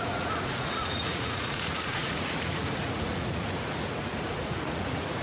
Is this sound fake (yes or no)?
yes